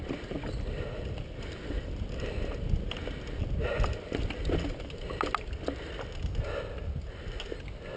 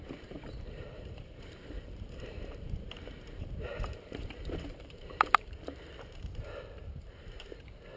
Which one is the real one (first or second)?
first